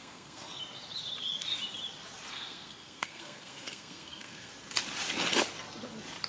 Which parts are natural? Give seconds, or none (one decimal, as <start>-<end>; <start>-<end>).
0.6-2.3; 4.5-6.3